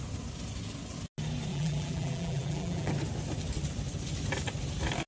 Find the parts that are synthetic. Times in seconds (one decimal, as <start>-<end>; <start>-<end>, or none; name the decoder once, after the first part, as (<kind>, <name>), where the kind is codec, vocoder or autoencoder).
1.5-2.9 (vocoder, BigVGAN v2)